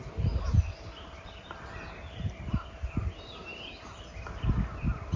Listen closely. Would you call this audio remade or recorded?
recorded